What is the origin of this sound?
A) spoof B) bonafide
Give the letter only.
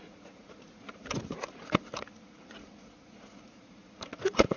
A